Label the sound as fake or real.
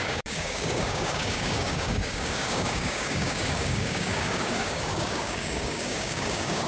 fake